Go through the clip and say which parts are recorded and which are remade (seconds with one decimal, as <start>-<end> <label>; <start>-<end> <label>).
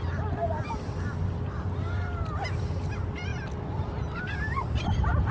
0.0-5.3 recorded